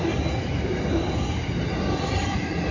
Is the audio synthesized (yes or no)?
no